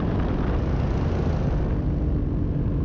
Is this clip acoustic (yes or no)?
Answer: yes